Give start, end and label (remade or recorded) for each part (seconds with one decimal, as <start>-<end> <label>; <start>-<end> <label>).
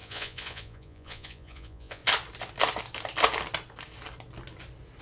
0.0-2.0 remade; 2.0-5.0 recorded